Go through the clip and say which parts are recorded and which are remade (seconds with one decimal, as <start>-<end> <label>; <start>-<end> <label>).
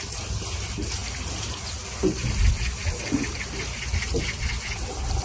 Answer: 0.0-5.2 recorded